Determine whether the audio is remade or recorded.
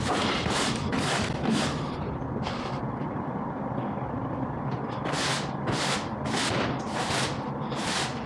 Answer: remade